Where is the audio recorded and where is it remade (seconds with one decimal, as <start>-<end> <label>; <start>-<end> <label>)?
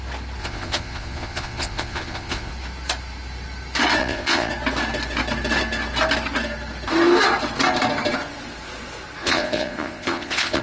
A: 0.0-0.4 recorded; 0.4-2.5 remade; 2.5-4.0 recorded; 4.0-4.5 remade; 4.5-9.2 recorded; 9.2-10.6 remade